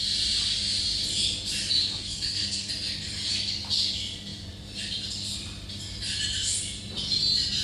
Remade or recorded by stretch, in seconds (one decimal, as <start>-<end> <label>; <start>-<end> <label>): 0.0-1.8 recorded; 1.8-2.7 remade; 2.7-7.6 recorded